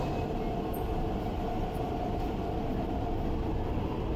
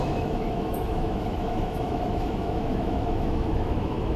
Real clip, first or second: first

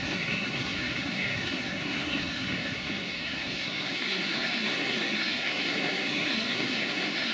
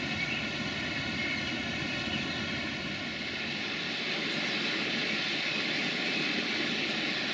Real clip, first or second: second